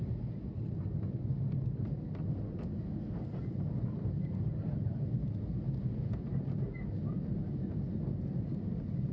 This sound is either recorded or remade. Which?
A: recorded